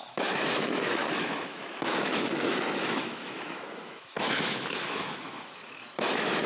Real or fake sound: fake